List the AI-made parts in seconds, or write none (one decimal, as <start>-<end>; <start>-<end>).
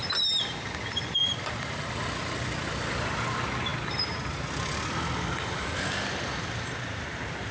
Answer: none